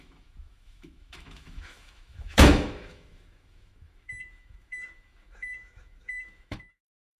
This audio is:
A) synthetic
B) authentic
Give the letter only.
A